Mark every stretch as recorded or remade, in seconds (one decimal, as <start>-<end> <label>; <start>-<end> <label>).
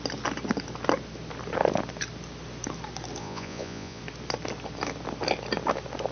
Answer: 0.0-3.2 recorded; 3.2-4.0 remade; 4.0-6.1 recorded